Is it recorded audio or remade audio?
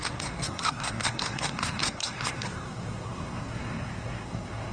remade